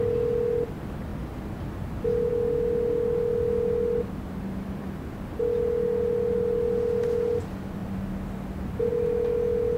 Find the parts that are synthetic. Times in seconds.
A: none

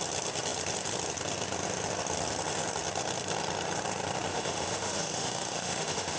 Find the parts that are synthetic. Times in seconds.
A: 4.3-6.2 (autoencoder, DAC-VAE)

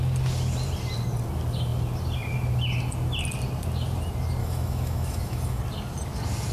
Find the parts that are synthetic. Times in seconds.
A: 4.4-5.6 (autoencoder, DAC-VAE)